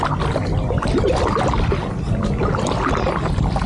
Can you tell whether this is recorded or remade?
recorded